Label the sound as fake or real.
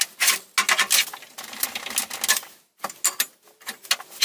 real